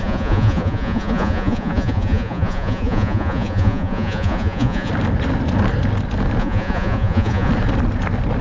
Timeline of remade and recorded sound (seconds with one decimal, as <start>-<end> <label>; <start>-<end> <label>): 0.0-4.9 remade; 4.9-6.4 recorded; 6.4-7.5 remade; 7.5-8.4 recorded